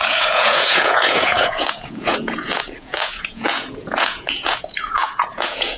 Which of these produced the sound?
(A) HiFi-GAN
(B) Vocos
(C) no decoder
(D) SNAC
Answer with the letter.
B